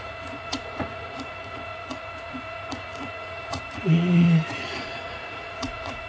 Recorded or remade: remade